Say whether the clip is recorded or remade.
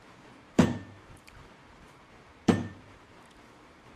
remade